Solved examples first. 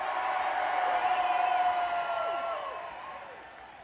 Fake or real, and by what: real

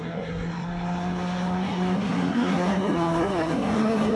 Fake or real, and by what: fake, codec, SNAC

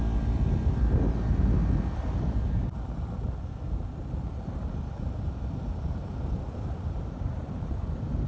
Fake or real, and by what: real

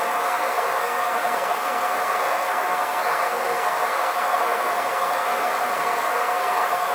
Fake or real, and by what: fake, codec, SNAC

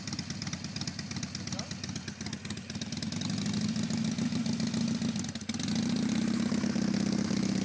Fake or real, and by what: real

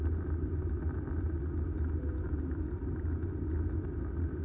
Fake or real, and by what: real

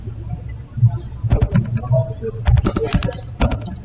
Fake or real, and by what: real